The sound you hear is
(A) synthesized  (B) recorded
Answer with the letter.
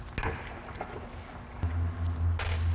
B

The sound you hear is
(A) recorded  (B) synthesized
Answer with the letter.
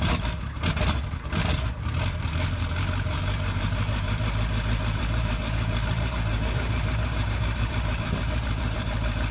B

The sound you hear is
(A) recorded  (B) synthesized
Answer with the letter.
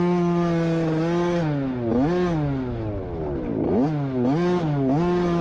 A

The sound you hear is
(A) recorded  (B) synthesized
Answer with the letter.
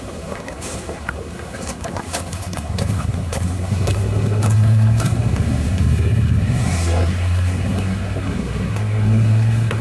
B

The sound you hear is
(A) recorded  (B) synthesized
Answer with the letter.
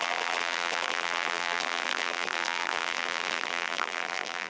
B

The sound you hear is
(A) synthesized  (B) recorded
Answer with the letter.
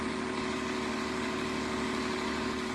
A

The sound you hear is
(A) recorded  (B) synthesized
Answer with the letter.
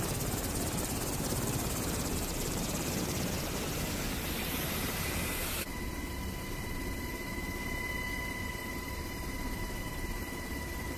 B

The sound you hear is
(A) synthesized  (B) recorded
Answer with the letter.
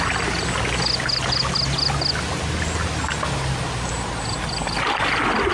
B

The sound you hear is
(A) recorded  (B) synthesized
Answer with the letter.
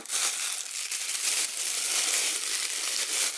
A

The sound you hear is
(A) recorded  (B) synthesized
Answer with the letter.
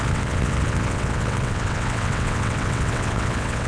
B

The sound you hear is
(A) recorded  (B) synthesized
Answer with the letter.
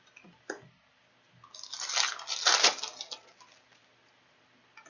A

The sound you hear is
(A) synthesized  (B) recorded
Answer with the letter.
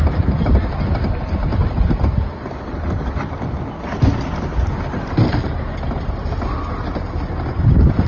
A